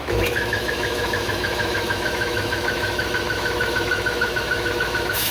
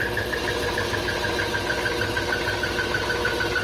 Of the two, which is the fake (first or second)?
first